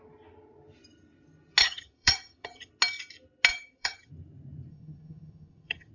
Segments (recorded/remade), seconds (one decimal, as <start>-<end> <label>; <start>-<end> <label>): 0.0-1.6 recorded; 1.6-2.7 remade; 2.7-3.5 recorded; 3.5-4.1 remade; 4.1-4.7 recorded; 4.7-5.9 remade